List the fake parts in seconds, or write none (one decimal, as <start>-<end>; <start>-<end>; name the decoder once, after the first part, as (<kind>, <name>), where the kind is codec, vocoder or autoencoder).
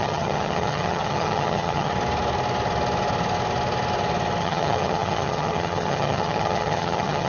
0.0-1.9 (vocoder, HiFi-GAN); 4.4-7.3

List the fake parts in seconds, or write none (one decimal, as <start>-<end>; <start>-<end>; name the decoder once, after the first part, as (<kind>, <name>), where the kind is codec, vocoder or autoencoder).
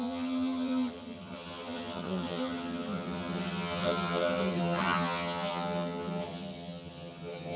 0.0-7.6 (vocoder, HiFi-GAN)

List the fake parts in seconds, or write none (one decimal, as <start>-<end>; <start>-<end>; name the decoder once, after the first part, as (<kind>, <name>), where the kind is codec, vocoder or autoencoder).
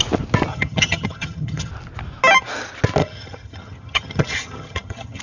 0.5-1.7 (vocoder, HiFi-GAN); 3.0-5.2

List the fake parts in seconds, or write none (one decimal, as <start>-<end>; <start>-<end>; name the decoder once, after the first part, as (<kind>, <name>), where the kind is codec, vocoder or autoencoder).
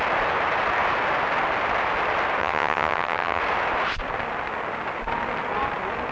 2.4-3.4 (vocoder, HiFi-GAN)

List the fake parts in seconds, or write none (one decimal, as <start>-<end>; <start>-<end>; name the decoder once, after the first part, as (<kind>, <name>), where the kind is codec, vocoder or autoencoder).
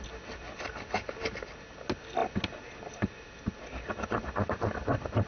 none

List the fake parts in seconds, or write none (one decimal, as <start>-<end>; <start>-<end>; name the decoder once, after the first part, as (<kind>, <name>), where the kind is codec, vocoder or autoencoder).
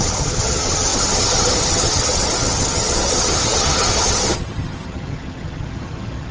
0.0-6.3 (vocoder, HiFi-GAN)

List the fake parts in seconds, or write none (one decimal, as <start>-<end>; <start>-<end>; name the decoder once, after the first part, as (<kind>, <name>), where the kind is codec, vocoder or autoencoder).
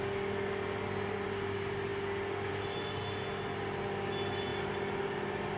none